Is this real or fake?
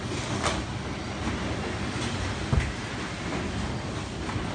real